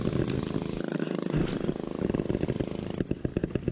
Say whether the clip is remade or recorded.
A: recorded